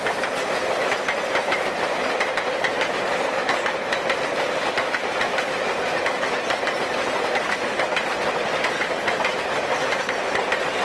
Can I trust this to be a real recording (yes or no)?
yes